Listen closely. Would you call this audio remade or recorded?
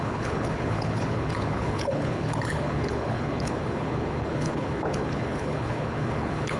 remade